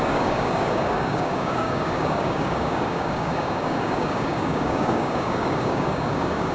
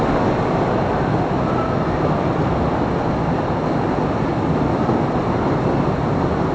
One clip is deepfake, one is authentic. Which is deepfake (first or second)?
first